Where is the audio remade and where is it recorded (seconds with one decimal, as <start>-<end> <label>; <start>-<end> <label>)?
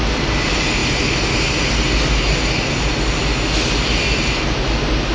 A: 0.0-5.1 recorded